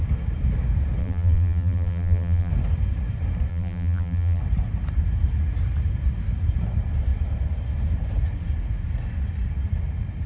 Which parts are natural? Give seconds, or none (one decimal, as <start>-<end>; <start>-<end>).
0.0-1.0; 2.5-3.5; 4.4-10.3